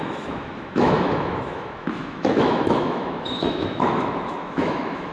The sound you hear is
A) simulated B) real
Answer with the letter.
A